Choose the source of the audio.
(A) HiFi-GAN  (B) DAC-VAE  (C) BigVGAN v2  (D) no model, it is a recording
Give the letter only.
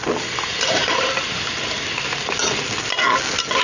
D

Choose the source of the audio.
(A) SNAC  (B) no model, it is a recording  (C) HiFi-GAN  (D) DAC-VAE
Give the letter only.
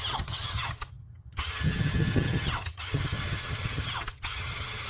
C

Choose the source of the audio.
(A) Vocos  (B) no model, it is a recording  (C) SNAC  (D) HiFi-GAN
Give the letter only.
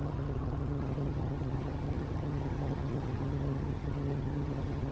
D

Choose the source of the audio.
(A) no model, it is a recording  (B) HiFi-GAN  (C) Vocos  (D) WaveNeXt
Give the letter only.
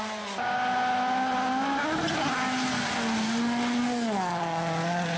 A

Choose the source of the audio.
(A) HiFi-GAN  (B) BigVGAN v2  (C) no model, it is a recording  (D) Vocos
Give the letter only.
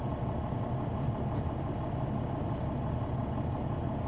C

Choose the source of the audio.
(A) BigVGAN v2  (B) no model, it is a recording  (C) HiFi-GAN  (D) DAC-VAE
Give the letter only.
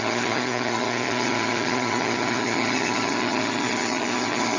C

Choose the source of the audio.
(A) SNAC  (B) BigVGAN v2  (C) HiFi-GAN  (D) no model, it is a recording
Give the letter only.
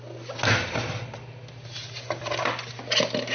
D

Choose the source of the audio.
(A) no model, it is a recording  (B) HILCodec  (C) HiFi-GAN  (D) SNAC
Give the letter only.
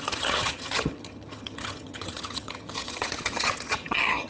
C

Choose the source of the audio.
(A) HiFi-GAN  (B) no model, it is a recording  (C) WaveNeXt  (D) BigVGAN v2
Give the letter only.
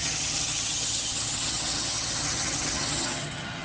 A